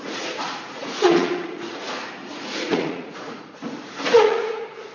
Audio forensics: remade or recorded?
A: remade